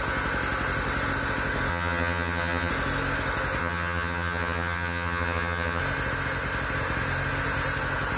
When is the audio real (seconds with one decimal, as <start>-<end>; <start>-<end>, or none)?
0.0-1.7; 2.7-3.6; 5.8-8.2